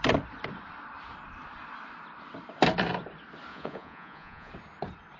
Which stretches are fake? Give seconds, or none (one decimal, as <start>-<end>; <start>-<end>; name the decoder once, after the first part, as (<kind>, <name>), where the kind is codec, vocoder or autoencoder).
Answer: 3.5-4.5 (vocoder, Vocos)